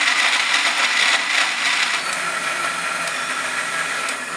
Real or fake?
real